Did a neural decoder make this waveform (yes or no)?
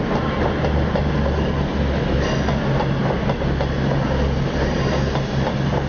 no